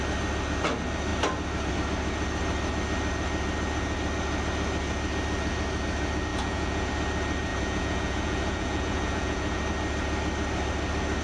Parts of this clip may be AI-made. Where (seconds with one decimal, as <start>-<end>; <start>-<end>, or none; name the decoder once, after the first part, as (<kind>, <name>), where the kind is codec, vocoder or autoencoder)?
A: 6.3-6.9 (vocoder, Vocos); 7.5-9.6